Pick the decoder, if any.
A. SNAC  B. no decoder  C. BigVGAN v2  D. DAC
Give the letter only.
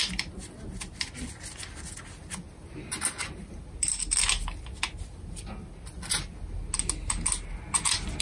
B